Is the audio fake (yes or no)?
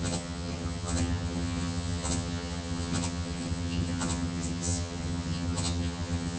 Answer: yes